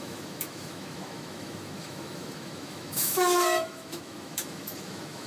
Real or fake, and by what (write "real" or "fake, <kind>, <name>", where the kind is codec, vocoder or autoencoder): fake, autoencoder, DAC-VAE